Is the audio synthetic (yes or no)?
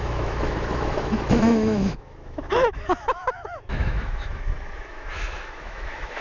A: yes